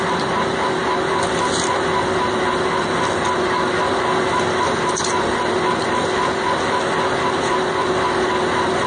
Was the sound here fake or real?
real